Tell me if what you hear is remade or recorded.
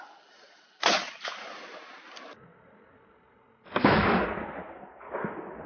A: recorded